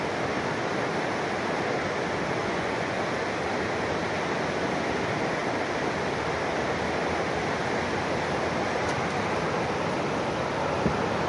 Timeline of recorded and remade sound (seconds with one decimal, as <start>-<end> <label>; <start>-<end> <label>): 0.0-2.4 recorded; 2.4-3.0 remade; 3.0-11.3 recorded